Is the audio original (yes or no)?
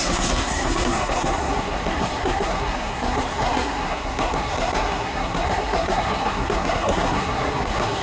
no